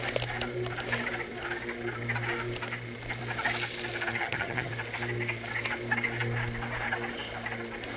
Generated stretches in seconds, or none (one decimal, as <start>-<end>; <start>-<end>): 4.1-4.7